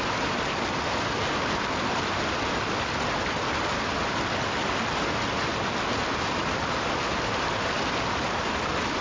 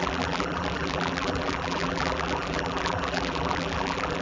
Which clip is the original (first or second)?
first